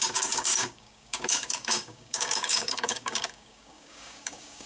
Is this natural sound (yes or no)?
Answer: no